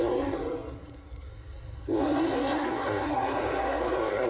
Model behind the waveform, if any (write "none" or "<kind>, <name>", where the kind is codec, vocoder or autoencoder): codec, SNAC